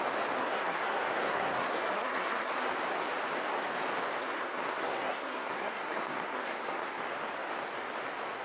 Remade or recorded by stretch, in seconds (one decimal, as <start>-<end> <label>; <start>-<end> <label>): 0.0-0.4 recorded; 0.4-2.7 remade; 2.7-4.2 recorded; 4.2-7.0 remade; 7.0-8.4 recorded